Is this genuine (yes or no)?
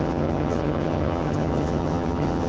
no